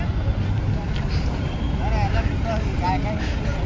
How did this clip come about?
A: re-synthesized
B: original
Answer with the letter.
B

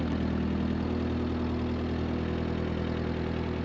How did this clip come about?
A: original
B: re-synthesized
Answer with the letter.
A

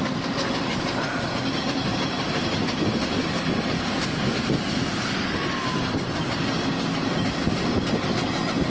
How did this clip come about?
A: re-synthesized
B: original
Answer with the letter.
B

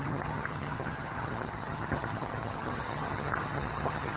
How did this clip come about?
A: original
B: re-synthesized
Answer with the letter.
B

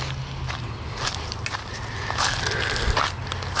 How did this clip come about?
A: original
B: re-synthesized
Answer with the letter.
A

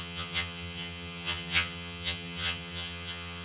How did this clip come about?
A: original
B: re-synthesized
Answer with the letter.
B